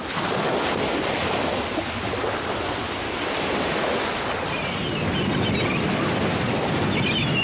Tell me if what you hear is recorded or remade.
recorded